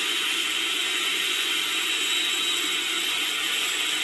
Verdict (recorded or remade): remade